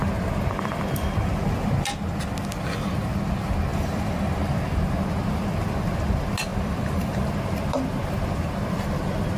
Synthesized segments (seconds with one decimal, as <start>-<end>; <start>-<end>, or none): 3.7-4.5; 6.5-7.2